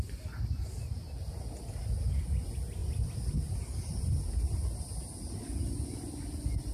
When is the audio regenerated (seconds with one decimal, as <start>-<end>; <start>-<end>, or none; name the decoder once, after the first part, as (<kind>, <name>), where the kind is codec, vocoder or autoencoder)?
none